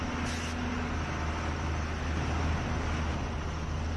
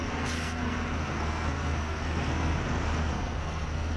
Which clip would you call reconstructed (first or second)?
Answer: second